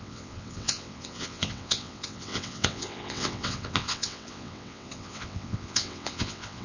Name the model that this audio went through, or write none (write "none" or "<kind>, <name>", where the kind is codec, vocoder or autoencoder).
vocoder, WaveNeXt